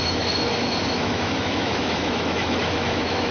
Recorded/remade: remade